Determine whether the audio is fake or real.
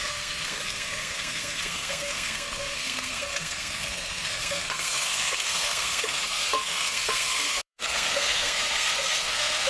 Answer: fake